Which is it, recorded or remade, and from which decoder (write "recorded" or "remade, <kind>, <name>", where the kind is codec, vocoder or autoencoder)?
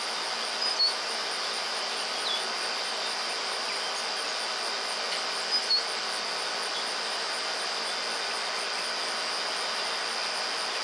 recorded